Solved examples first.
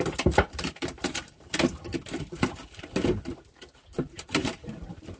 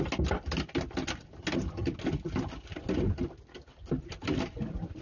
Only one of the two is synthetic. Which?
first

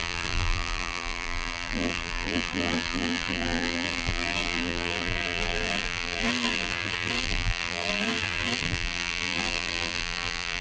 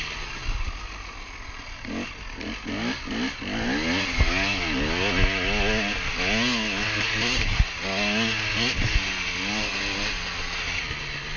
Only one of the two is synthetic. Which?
first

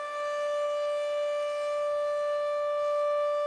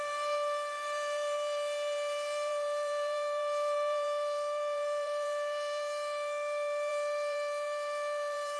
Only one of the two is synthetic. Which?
second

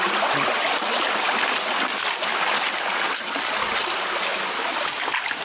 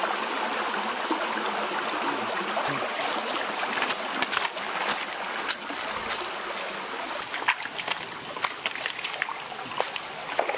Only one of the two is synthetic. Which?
first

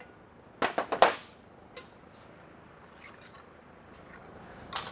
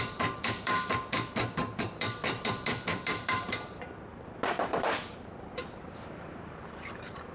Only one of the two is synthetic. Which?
second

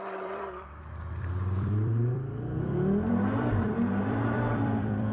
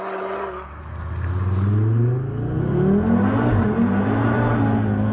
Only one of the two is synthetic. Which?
first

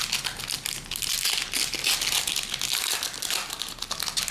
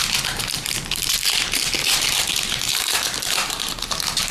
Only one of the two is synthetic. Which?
second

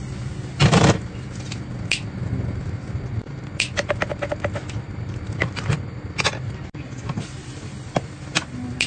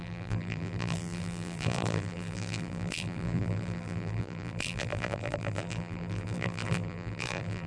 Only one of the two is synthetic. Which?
second